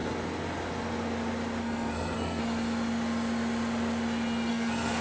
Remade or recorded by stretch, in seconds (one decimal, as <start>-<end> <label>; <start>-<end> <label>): 0.0-1.6 recorded; 1.6-2.4 remade; 2.4-4.5 recorded; 4.5-5.0 remade